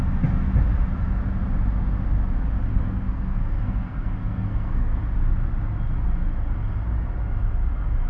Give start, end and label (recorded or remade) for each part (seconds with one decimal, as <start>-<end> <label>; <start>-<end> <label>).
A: 0.0-2.7 recorded; 2.7-5.0 remade; 5.0-8.1 recorded